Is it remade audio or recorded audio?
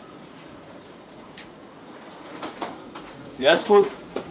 remade